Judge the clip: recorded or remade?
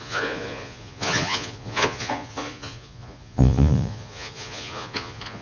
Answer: remade